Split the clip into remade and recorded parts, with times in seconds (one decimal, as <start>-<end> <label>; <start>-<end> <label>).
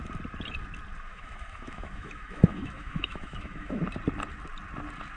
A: 0.0-1.1 recorded; 1.1-3.8 remade; 3.8-5.2 recorded